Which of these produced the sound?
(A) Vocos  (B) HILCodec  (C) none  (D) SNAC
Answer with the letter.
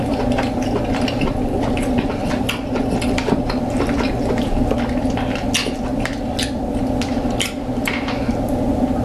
C